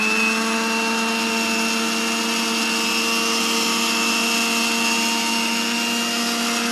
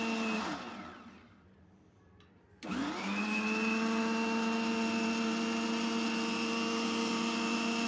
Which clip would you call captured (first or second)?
first